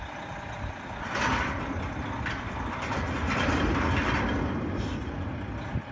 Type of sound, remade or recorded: recorded